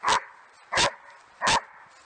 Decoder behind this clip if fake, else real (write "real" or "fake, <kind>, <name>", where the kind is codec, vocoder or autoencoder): real